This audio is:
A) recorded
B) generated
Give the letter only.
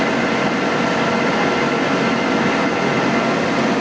A